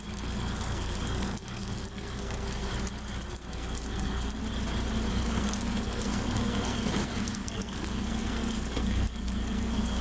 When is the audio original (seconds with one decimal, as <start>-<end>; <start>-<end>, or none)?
2.7-3.3; 4.4-5.1

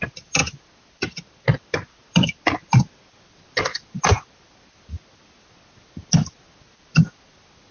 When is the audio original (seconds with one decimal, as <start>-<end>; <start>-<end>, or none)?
0.0-7.7

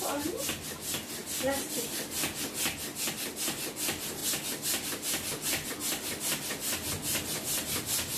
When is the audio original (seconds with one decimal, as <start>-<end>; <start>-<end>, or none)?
0.0-8.2

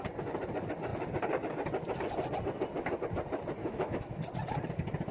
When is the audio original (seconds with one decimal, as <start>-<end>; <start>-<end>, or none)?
0.0-3.6; 4.2-5.1

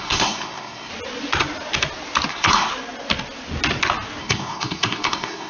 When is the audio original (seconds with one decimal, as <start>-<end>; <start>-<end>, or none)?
0.9-2.3; 2.7-4.2

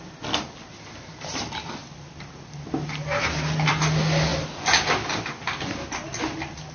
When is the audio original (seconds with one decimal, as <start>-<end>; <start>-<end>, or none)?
0.0-6.7